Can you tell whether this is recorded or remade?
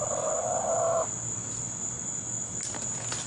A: recorded